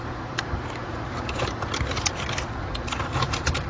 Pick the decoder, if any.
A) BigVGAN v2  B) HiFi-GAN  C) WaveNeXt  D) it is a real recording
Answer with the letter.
A